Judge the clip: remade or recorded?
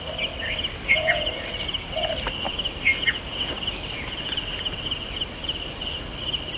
recorded